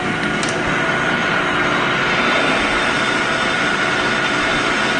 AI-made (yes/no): no